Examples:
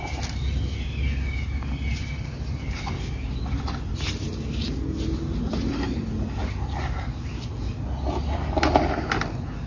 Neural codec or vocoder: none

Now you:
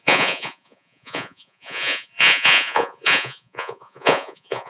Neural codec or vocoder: vocoder, Vocos